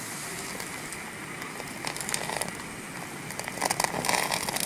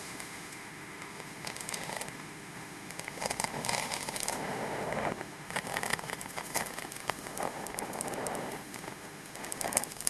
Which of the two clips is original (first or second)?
first